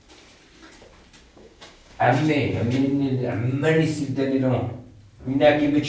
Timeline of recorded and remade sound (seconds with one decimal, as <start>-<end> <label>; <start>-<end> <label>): 0.0-1.3 recorded; 1.3-2.8 remade; 2.8-5.9 recorded